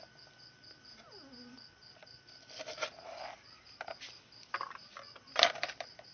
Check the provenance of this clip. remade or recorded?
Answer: recorded